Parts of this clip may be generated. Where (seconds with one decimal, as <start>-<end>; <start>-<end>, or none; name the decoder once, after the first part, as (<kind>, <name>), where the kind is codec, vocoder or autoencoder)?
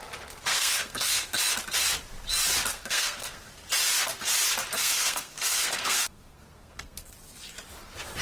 0.5-1.4 (codec, SNAC); 2.7-3.5; 4.8-7.1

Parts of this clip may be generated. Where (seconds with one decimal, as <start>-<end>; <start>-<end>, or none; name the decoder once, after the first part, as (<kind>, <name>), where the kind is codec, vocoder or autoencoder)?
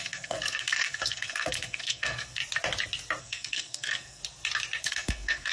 0.0-2.4 (codec, SNAC); 3.2-4.2; 4.8-5.5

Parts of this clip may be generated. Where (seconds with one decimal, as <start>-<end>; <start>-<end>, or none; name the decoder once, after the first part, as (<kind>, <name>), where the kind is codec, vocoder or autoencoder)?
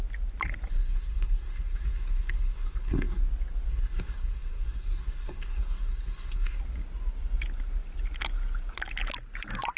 0.7-3.2 (codec, SNAC); 3.7-6.6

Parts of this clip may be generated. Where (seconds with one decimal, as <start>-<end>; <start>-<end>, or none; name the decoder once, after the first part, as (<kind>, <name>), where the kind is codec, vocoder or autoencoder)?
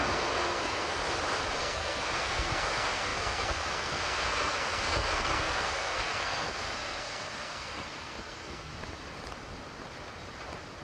0.0-1.0 (codec, SNAC); 1.6-8.7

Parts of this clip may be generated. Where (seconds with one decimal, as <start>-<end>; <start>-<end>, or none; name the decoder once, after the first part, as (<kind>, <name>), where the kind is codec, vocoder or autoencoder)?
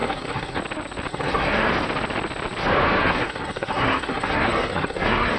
0.0-0.6 (codec, SNAC); 1.1-1.7; 3.0-5.4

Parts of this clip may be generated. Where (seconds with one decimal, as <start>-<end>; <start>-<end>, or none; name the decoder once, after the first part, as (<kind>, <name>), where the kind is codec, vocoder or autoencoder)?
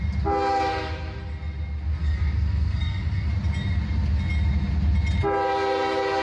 2.0-3.3 (codec, SNAC)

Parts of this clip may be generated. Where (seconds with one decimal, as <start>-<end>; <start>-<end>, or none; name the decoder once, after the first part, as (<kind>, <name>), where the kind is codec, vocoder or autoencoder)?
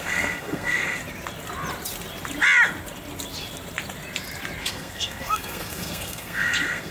0.0-1.0 (codec, SNAC); 4.6-6.9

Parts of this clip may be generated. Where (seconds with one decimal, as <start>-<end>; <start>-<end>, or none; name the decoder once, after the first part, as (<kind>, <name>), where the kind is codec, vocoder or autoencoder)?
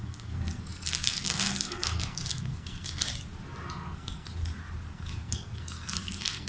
0.0-3.1 (codec, SNAC); 3.7-4.3; 4.9-6.5